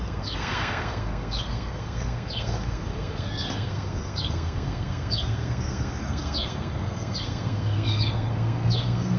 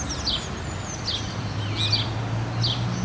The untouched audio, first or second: second